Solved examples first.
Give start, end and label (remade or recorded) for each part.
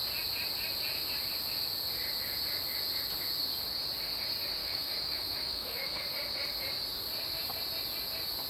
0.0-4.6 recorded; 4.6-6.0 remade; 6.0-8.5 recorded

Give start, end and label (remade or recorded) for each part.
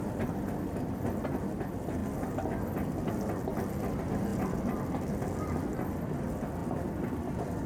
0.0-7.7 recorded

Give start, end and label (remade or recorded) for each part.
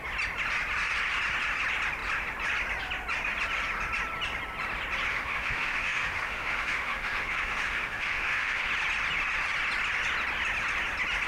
0.0-5.1 recorded; 5.1-8.7 remade; 8.7-11.3 recorded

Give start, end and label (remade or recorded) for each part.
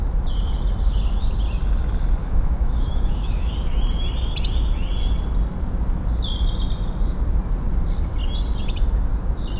0.0-2.2 recorded; 2.2-3.5 remade; 3.5-9.6 recorded